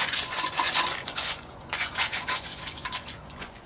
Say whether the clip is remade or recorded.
remade